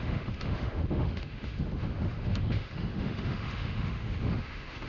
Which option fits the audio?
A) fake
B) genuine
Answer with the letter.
A